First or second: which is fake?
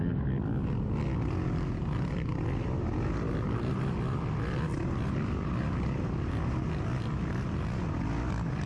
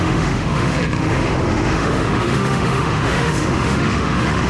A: second